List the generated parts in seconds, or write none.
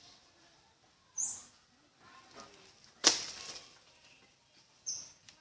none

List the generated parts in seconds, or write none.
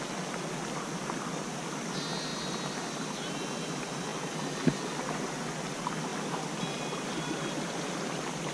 none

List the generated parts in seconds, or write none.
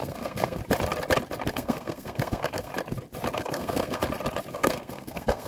0.0-0.6 (codec, SNAC); 1.5-2.7; 3.4-4.0; 4.5-5.5